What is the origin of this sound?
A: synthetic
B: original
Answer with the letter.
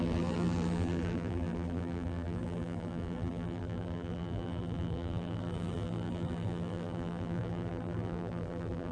A